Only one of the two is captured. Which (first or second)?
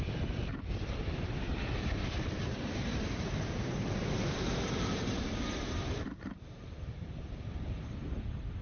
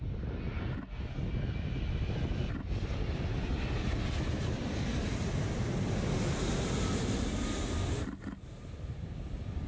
second